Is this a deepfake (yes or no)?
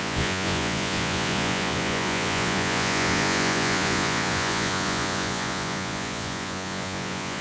yes